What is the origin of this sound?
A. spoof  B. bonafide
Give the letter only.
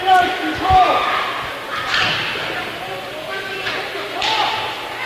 B